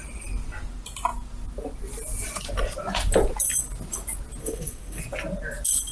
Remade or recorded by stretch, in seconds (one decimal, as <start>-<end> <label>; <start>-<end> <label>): 0.0-4.4 recorded; 4.4-5.0 remade; 5.0-5.9 recorded